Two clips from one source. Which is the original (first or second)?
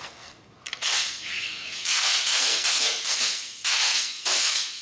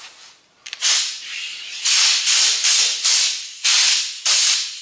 second